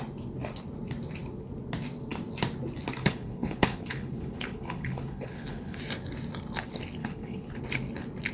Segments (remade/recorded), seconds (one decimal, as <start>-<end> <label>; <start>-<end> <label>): 0.0-3.0 recorded; 3.0-5.8 remade; 5.8-7.0 recorded; 7.0-7.6 remade; 7.6-8.3 recorded

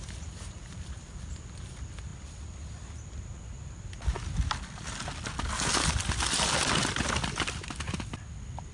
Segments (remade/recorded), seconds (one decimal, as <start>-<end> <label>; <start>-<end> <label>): 0.0-8.7 recorded

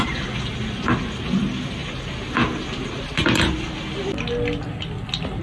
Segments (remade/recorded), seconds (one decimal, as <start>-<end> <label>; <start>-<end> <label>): 0.0-5.4 recorded

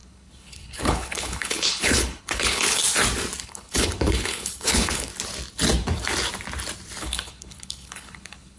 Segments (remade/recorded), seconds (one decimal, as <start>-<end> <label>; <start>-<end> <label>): 0.0-2.8 remade; 2.8-3.4 recorded; 3.4-5.1 remade; 5.1-7.0 recorded; 7.0-8.6 remade

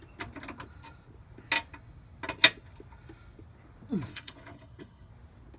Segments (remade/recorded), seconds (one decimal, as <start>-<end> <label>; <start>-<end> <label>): 0.0-4.1 recorded; 4.1-5.1 remade; 5.1-5.6 recorded